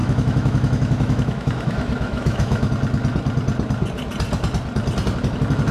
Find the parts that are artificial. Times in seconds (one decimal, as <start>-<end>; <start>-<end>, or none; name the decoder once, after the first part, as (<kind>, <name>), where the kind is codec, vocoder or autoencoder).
0.0-2.7 (autoencoder, DAC-VAE)

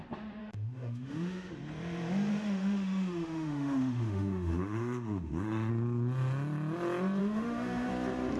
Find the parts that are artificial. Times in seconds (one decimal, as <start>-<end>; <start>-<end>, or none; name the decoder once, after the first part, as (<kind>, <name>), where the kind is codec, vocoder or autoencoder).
0.4-1.5 (autoencoder, DAC-VAE); 2.3-5.7; 7.2-7.9